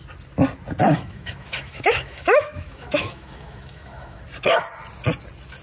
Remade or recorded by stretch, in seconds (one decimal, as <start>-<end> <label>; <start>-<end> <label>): 0.0-0.8 recorded; 0.8-4.2 remade; 4.2-5.6 recorded